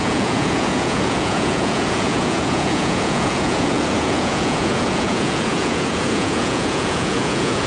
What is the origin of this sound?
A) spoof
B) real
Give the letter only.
A